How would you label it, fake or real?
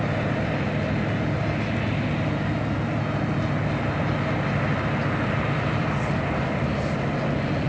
real